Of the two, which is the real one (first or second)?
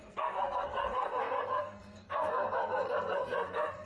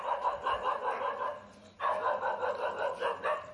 second